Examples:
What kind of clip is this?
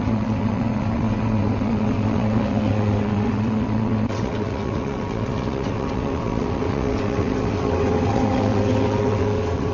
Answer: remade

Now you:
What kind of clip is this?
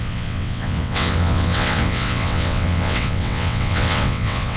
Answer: remade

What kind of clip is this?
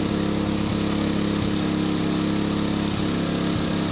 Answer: recorded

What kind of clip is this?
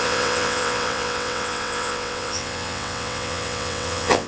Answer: remade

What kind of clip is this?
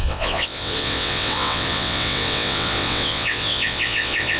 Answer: remade